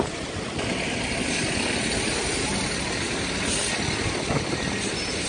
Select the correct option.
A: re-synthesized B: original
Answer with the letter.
B